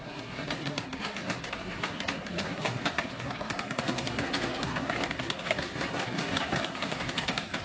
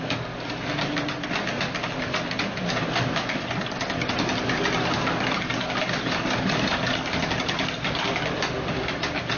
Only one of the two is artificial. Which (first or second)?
first